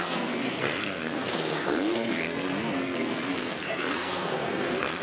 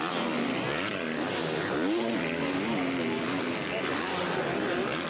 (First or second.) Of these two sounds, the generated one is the first